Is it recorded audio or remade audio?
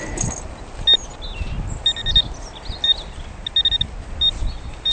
recorded